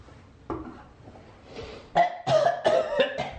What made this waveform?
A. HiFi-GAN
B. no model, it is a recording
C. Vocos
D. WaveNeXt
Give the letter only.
B